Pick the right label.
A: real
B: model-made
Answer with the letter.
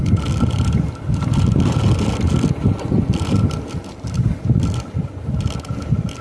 A